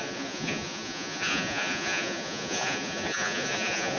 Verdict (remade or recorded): remade